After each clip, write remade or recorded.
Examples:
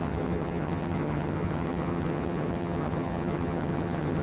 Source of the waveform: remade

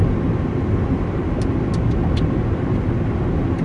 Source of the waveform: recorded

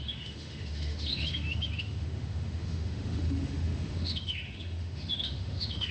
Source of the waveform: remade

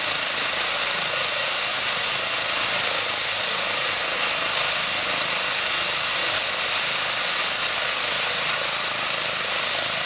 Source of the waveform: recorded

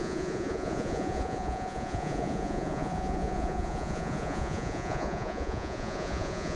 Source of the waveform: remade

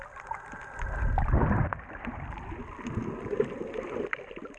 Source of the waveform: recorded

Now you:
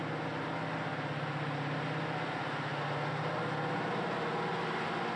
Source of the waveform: recorded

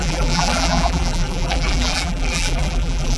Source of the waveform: remade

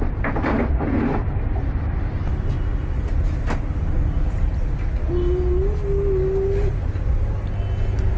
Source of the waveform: recorded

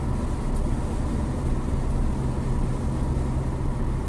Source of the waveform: recorded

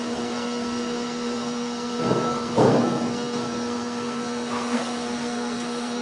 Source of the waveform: remade